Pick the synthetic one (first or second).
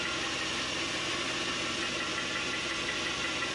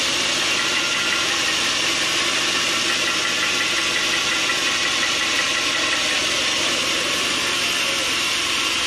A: second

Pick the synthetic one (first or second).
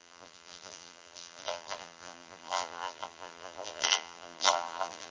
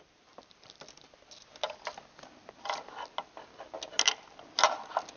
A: first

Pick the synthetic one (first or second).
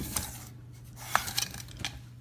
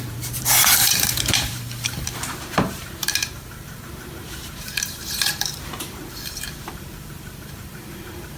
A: second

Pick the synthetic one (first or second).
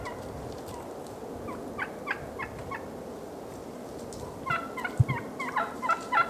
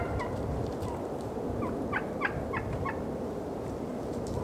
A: second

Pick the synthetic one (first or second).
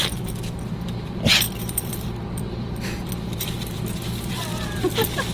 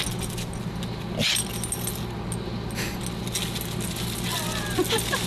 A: first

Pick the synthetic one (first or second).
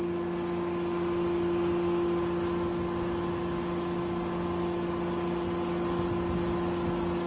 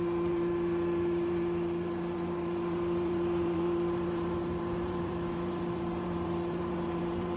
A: second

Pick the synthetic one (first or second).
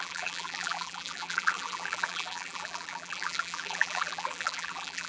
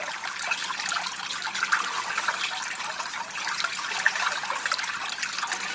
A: first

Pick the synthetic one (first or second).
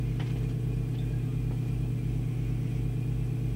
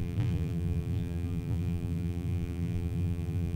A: second